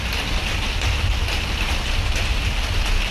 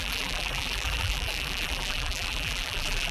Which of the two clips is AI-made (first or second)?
second